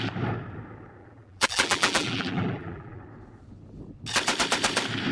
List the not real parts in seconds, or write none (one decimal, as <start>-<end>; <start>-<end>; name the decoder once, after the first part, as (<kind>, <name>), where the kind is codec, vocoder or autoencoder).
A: 1.0-3.0 (vocoder, BigVGAN v2)